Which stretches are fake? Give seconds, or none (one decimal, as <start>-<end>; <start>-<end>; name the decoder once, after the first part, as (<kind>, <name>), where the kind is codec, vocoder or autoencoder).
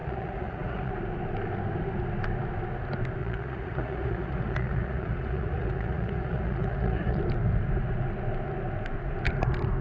0.0-0.9 (vocoder, Vocos); 3.2-7.2